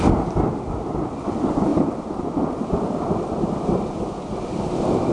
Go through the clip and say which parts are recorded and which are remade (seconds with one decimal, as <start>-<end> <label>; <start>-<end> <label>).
0.0-1.7 recorded; 1.7-5.1 remade